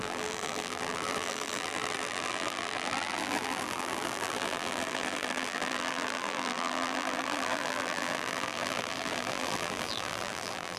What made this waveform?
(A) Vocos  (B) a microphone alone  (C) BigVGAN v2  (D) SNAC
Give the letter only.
C